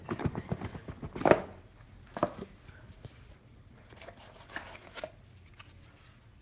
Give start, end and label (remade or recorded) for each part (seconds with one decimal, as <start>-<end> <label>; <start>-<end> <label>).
0.0-6.4 recorded